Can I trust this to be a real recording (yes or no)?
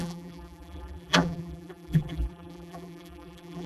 no